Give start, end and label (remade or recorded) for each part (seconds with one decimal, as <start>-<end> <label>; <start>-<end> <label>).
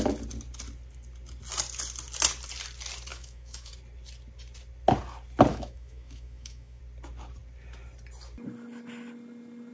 0.0-3.1 recorded; 3.1-3.7 remade; 3.7-5.5 recorded; 5.5-6.8 remade; 6.8-9.7 recorded